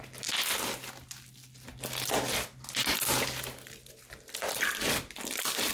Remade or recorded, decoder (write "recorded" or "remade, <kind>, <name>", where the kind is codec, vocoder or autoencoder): recorded